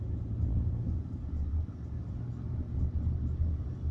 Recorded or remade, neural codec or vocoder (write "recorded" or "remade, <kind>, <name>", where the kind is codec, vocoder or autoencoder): recorded